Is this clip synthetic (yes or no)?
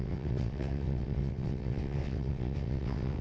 yes